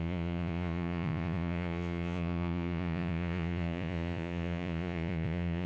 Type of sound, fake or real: fake